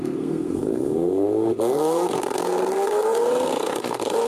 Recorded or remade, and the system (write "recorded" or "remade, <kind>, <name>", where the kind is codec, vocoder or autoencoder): remade, codec, SNAC